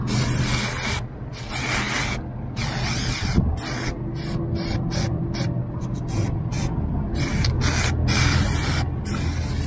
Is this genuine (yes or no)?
yes